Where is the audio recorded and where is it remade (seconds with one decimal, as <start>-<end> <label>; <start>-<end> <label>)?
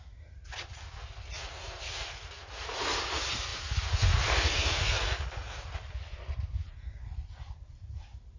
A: 0.0-8.4 recorded